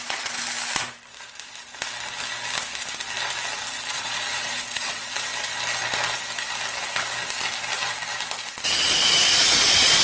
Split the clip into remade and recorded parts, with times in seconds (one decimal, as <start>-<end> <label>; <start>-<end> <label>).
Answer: 0.0-0.4 remade; 0.4-3.9 recorded; 3.9-5.3 remade; 5.3-8.8 recorded; 8.8-10.0 remade